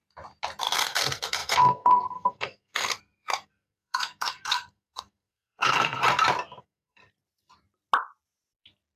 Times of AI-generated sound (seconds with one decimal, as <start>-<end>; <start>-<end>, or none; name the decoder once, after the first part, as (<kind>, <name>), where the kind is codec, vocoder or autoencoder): 0.6-6.0 (codec, SNAC); 6.6-7.0